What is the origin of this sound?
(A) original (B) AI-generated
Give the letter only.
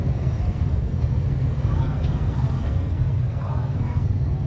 B